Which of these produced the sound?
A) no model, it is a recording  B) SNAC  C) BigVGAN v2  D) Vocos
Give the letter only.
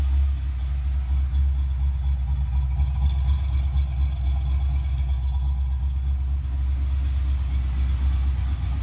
A